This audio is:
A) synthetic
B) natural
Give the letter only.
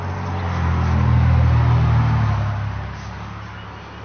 B